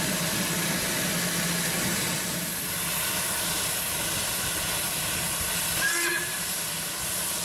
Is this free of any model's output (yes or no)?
yes